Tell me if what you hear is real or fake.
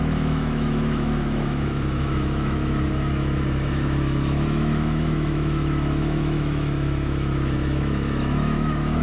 fake